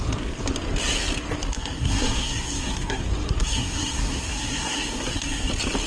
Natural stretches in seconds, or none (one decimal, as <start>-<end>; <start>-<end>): 0.0-1.5; 3.0-3.4; 5.5-5.9